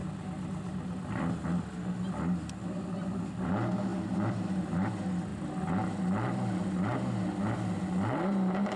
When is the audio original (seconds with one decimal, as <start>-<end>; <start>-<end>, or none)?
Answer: 0.0-8.8